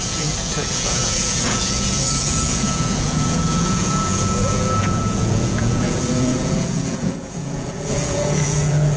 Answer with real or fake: fake